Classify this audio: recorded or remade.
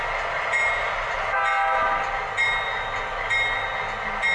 recorded